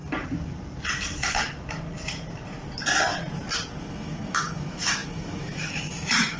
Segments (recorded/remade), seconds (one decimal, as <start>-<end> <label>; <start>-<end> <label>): 0.0-3.8 recorded; 3.8-6.4 remade